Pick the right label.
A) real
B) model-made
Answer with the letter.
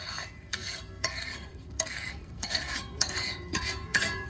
B